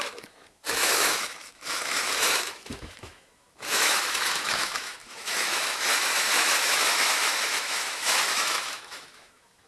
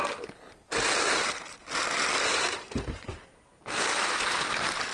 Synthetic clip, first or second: first